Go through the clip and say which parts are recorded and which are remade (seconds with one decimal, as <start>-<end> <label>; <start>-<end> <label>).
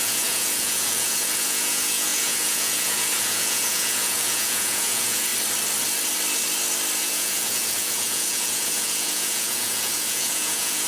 0.0-5.3 remade; 5.3-7.0 recorded; 7.0-10.9 remade